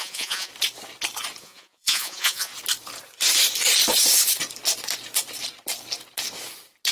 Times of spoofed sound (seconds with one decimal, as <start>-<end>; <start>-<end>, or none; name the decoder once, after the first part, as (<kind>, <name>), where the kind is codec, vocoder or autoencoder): 0.0-0.5 (vocoder, Vocos); 1.4-2.5